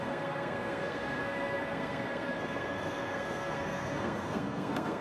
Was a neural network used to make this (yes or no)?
yes